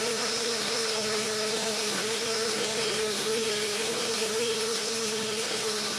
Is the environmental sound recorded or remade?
remade